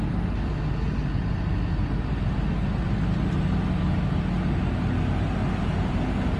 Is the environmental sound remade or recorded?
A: recorded